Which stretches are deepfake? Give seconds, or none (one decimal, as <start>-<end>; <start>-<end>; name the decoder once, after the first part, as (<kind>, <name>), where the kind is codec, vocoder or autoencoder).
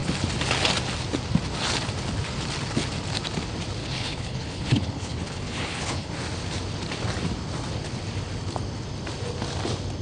3.8-6.1 (codec, HILCodec)